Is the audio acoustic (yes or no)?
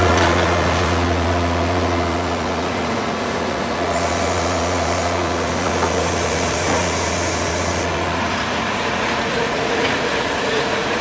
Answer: no